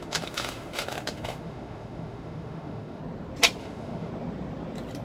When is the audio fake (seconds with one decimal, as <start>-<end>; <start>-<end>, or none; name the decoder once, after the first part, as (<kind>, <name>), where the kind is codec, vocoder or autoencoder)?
0.0-3.0 (autoencoder, DAC-VAE); 3.6-4.1